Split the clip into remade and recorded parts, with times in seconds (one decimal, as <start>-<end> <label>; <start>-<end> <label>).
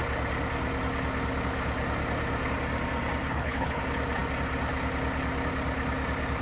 0.0-3.3 recorded; 3.3-3.8 remade; 3.8-6.4 recorded